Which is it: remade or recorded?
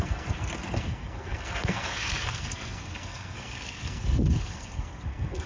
remade